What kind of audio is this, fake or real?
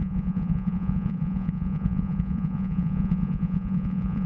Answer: fake